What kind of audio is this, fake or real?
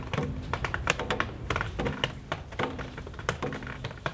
fake